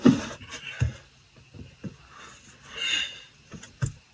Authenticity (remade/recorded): recorded